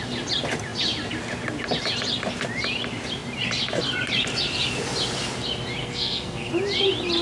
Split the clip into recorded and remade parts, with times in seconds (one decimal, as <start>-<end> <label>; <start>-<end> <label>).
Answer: 0.0-5.8 recorded; 5.8-6.5 remade; 6.5-7.2 recorded